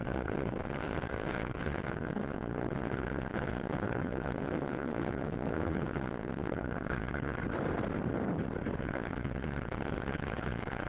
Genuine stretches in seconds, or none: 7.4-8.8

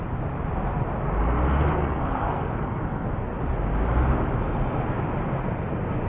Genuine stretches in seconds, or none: 0.0-1.8; 3.1-6.1

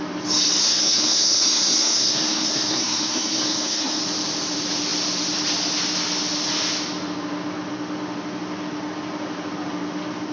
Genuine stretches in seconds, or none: 0.0-0.6; 4.0-10.3

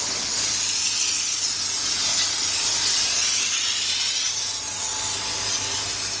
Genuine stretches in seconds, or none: 0.0-6.2